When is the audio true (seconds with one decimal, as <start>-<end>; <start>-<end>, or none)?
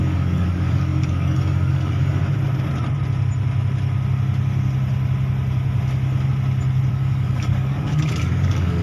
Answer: 2.2-6.9